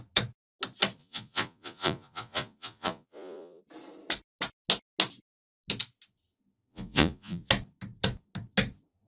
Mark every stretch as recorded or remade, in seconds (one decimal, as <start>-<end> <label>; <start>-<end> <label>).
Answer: 0.0-1.0 recorded; 1.0-3.6 remade; 3.6-6.7 recorded; 6.7-7.5 remade; 7.5-9.1 recorded

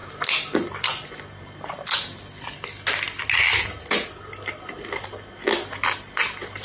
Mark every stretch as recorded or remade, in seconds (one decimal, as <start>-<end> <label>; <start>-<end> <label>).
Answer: 0.0-6.6 recorded

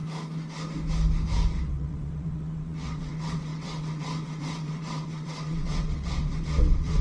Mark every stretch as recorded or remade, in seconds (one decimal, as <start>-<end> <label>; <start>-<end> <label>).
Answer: 0.0-1.5 recorded; 1.5-7.0 remade